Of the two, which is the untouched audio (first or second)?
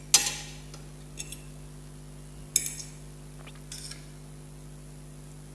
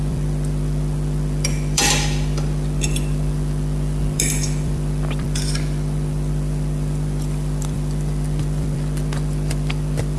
first